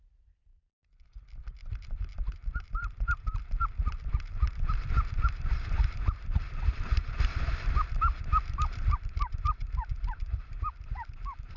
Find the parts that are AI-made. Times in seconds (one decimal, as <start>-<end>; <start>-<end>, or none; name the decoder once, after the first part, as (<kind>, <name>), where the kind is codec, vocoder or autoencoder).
0.0-0.5 (vocoder, BigVGAN v2); 1.7-11.6